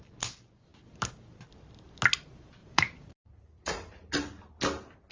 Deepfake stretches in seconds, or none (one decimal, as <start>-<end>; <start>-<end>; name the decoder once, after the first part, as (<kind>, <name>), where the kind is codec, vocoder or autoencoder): 2.6-4.1 (vocoder, Vocos)